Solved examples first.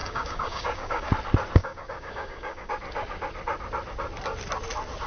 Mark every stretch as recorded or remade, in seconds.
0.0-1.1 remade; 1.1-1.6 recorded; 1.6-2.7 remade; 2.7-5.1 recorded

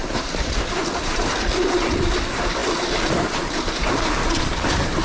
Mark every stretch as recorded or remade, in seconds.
0.0-5.0 recorded

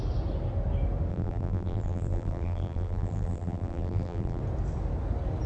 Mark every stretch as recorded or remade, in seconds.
0.0-1.1 recorded; 1.1-4.4 remade; 4.4-5.5 recorded

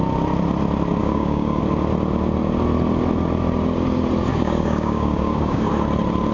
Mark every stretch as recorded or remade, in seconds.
0.0-1.0 recorded; 1.0-1.6 remade; 1.6-4.3 recorded; 4.3-5.7 remade; 5.7-6.3 recorded

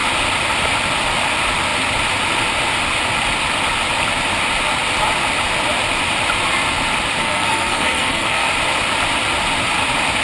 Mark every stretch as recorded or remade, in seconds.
0.0-7.2 recorded; 7.2-8.5 remade; 8.5-10.2 recorded

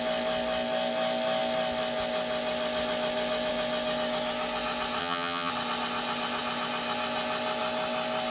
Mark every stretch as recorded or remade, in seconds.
0.0-5.0 recorded; 5.0-5.5 remade; 5.5-8.3 recorded

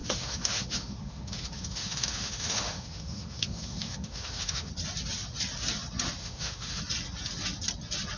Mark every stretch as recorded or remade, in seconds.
0.0-4.7 remade; 4.7-6.2 recorded; 6.2-6.8 remade; 6.8-8.2 recorded